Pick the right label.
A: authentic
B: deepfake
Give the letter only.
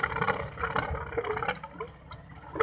A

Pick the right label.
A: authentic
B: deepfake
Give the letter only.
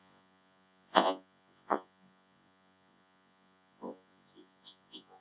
B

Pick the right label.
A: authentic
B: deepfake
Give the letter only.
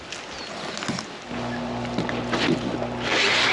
A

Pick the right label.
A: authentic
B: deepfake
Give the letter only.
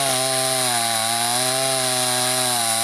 A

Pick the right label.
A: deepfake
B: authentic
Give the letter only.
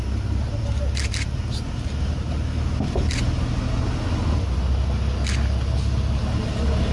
B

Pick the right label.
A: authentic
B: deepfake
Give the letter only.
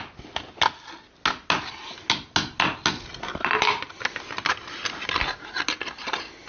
A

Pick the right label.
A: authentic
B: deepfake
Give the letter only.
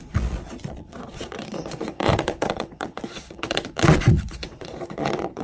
B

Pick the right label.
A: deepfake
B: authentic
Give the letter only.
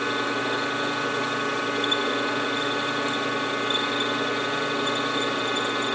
B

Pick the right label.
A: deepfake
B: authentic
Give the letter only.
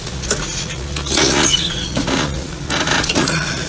A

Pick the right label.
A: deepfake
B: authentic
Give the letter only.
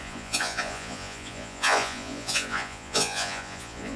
A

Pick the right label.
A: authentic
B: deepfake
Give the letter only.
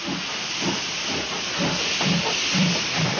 A